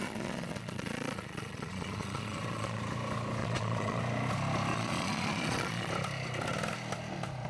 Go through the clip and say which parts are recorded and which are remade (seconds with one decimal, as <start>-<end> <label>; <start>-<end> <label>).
0.0-2.8 remade; 2.8-3.4 recorded; 3.4-4.0 remade; 4.0-4.7 recorded; 4.7-5.9 remade; 5.9-7.5 recorded